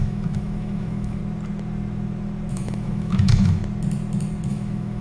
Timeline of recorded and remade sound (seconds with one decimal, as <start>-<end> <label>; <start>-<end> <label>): 0.0-1.2 remade; 1.2-2.5 recorded; 2.5-3.6 remade; 3.6-4.5 recorded; 4.5-5.0 remade